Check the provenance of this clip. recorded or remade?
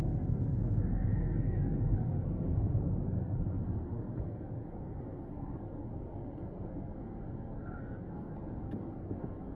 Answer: remade